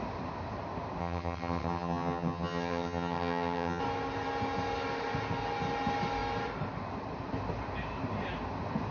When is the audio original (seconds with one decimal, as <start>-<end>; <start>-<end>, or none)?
0.0-1.0; 3.8-8.9